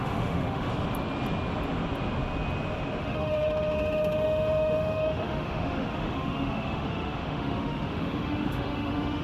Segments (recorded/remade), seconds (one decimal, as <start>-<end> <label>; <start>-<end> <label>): 0.0-0.7 remade; 0.7-3.0 recorded; 3.0-9.2 remade